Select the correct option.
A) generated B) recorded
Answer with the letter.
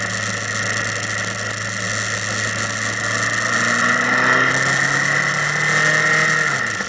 B